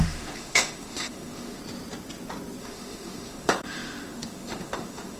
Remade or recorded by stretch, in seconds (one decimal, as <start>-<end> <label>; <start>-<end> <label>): 0.0-1.6 remade; 1.6-2.6 recorded; 2.6-5.2 remade